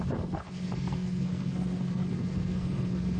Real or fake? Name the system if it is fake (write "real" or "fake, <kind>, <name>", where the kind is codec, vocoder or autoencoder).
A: fake, codec, SNAC